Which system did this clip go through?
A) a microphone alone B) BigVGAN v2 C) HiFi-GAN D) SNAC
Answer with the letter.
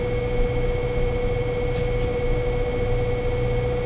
A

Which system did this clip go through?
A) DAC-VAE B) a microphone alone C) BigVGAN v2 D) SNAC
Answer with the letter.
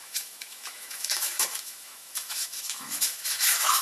A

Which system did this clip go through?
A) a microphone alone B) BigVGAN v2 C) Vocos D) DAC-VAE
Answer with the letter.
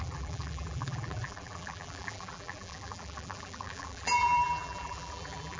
B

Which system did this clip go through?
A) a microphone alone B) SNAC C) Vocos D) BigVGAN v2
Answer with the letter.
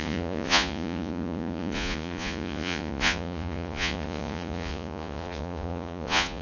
C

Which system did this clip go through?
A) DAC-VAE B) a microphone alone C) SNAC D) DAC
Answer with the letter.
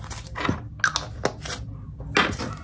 B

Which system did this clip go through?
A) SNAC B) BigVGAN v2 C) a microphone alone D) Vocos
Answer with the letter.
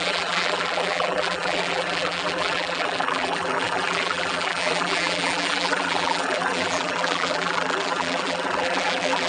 B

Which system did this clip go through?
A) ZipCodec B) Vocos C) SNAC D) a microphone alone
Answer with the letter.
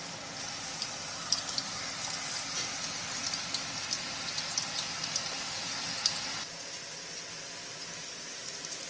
D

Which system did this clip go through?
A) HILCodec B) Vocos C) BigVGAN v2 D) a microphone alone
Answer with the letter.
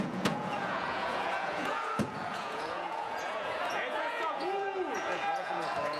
B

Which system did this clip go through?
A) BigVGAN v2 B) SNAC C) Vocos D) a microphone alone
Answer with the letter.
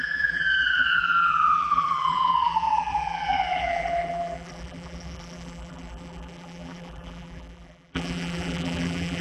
A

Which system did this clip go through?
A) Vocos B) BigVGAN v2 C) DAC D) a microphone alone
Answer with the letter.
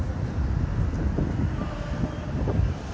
D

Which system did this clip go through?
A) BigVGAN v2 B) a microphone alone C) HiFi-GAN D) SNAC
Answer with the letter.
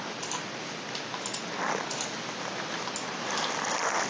B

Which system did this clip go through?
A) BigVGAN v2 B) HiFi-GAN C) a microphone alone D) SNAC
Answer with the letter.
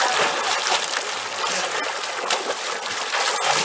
C